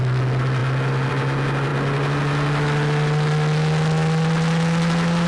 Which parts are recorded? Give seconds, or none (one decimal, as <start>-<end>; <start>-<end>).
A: 0.0-5.3